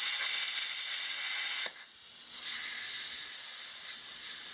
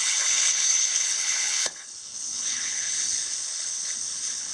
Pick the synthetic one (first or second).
second